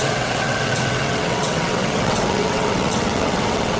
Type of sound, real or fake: fake